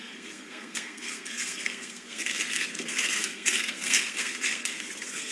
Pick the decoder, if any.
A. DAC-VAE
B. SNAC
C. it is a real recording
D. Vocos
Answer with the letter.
B